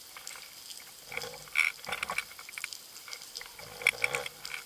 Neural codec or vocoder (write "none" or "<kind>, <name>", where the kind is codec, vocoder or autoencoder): none